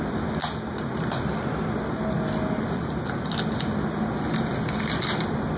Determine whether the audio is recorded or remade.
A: recorded